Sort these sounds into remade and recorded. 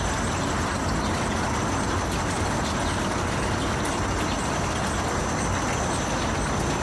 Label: recorded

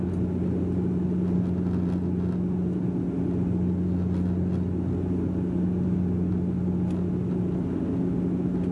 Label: recorded